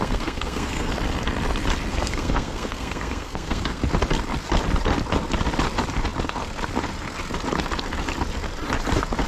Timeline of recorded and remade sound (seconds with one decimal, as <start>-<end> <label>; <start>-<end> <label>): 0.0-0.9 remade; 0.9-1.9 recorded; 1.9-3.8 remade; 3.8-9.3 recorded